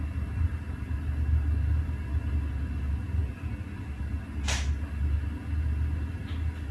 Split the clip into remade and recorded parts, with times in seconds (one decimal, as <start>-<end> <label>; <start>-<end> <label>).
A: 0.0-6.7 recorded